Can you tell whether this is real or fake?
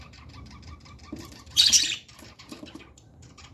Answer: fake